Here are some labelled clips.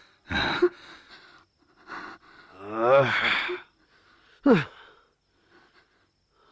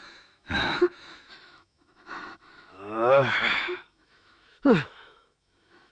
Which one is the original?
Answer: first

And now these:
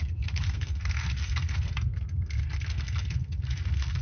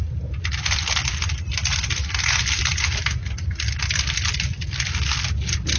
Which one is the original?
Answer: second